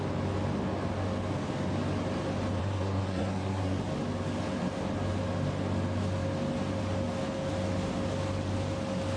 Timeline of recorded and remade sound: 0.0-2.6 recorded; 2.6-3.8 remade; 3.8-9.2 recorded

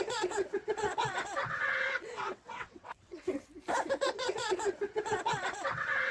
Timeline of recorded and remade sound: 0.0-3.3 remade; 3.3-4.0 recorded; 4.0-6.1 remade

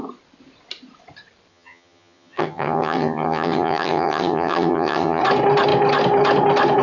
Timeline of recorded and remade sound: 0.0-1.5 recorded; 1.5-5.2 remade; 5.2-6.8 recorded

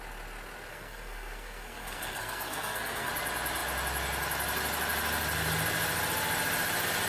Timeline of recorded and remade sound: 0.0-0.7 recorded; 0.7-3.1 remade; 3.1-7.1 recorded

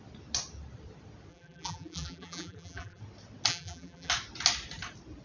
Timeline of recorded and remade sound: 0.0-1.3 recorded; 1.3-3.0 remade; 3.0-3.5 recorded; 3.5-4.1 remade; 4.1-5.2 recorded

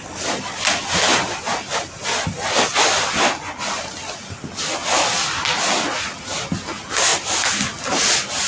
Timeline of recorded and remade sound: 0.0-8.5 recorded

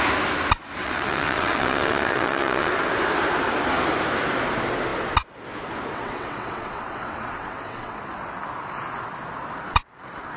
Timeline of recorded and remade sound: 0.0-0.8 recorded; 0.8-2.7 remade; 2.7-5.9 recorded; 5.9-8.0 remade; 8.0-10.4 recorded